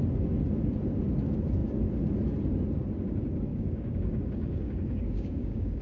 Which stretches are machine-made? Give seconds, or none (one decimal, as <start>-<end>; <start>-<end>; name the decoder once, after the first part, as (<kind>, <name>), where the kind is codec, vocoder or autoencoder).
3.5-5.8 (codec, DAC)